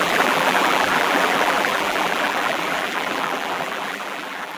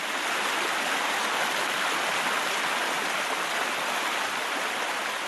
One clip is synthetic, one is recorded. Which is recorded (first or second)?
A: second